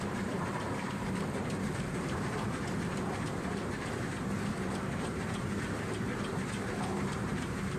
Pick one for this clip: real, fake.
fake